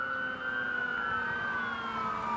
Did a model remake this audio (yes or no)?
no